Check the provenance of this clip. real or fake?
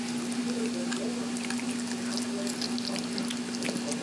real